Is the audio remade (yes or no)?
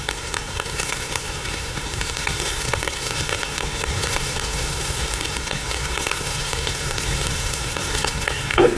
yes